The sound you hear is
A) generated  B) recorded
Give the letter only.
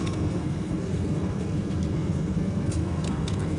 A